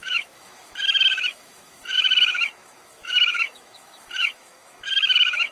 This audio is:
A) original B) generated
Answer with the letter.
B